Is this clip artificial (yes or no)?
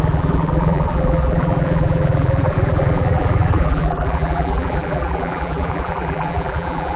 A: yes